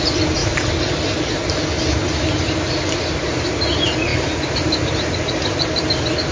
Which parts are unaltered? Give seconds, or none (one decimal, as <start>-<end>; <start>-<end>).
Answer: 0.0-6.3